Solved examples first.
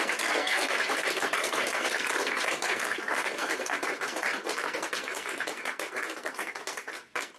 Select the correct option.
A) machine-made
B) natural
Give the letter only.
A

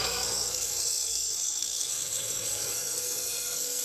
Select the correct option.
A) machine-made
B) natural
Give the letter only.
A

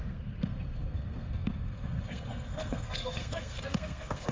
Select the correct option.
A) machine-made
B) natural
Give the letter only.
A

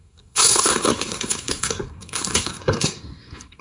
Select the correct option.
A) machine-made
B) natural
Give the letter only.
A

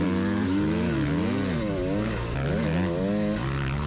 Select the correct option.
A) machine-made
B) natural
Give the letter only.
B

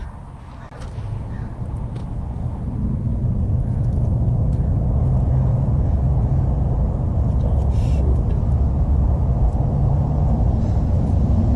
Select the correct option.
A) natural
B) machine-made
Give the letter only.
A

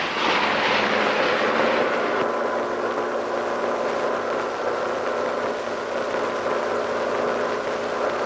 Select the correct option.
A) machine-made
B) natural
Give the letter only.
B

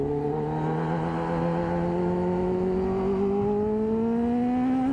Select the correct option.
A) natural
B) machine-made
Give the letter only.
A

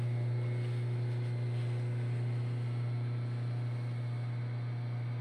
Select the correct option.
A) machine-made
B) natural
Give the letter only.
B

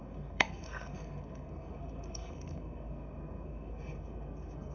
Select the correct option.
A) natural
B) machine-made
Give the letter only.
B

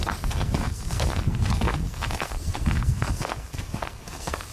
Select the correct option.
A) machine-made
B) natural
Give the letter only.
A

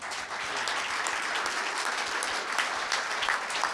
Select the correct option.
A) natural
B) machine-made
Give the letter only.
A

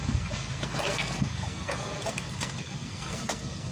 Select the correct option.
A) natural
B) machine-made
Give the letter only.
B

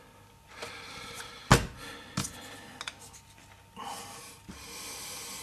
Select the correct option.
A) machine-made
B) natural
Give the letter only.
B